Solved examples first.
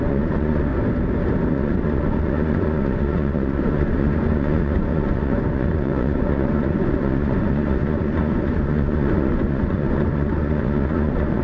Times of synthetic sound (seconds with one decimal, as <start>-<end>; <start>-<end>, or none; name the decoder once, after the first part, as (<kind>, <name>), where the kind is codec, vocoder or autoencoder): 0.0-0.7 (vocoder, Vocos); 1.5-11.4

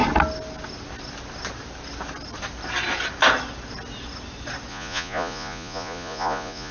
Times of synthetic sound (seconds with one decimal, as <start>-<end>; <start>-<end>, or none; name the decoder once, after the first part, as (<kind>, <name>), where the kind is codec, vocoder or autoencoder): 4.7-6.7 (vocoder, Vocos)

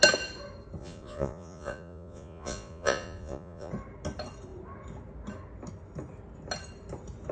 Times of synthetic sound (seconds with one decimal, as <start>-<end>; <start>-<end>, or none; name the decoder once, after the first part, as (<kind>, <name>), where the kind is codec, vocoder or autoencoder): 0.8-3.7 (vocoder, Vocos)

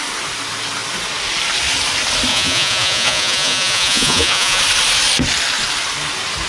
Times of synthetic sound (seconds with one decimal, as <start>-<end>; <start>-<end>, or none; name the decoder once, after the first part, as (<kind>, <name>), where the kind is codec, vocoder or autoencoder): 2.3-4.6 (vocoder, Vocos)

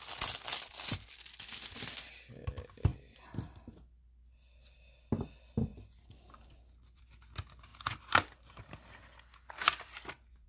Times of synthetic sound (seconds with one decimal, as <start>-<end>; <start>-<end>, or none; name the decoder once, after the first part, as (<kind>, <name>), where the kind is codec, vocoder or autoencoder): none